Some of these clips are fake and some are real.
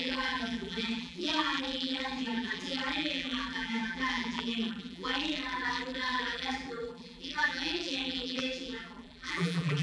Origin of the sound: fake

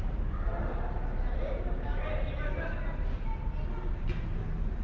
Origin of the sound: real